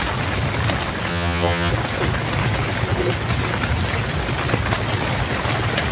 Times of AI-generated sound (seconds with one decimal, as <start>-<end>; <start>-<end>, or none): 1.1-1.7